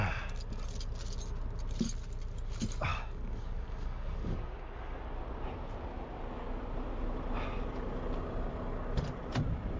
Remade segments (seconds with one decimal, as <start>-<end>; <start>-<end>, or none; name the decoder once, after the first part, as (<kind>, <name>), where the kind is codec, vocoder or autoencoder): 2.9-5.0 (codec, DAC)